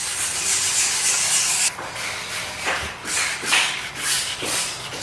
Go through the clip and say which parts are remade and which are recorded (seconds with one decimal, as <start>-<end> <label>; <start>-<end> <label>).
0.0-1.1 recorded; 1.1-5.0 remade